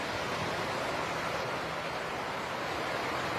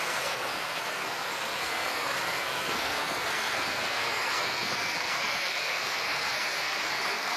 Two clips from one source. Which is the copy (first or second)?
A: second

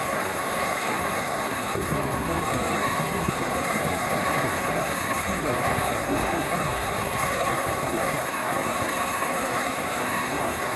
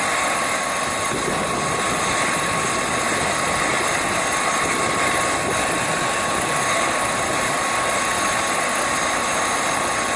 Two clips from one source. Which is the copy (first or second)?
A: first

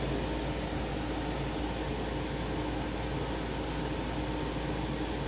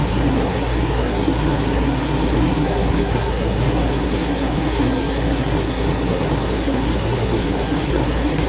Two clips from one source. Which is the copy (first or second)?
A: second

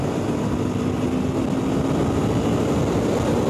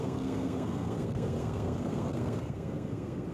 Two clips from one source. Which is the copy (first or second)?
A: second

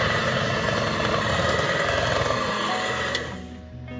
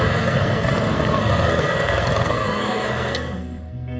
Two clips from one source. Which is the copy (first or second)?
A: second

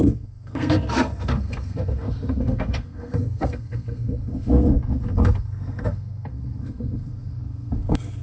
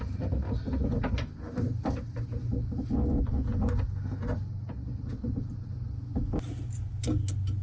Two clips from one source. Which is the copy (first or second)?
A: first